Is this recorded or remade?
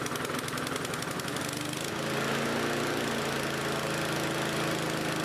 recorded